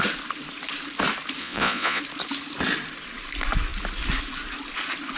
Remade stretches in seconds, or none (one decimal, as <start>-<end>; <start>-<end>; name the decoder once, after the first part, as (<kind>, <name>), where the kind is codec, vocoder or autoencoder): 1.4-2.0 (vocoder, Vocos)